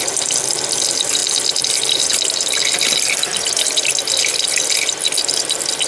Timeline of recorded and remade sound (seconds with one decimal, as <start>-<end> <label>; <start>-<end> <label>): 0.0-5.9 recorded